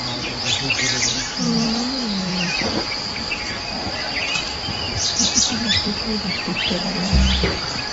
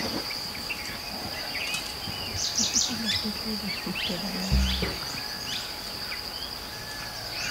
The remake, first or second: first